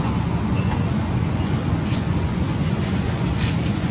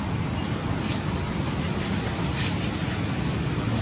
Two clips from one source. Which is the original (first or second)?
second